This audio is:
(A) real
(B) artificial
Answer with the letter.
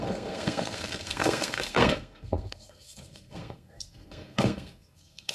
B